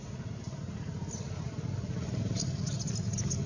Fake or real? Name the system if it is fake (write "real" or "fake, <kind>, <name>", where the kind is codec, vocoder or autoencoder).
real